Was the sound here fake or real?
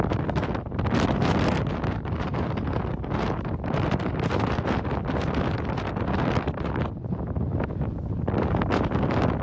real